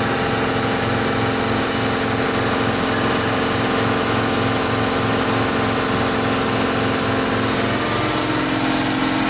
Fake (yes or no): no